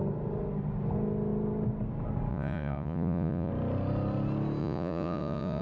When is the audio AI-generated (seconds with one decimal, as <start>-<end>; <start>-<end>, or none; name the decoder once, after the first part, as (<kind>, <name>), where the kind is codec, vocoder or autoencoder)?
2.3-3.5 (vocoder, Vocos); 4.6-5.6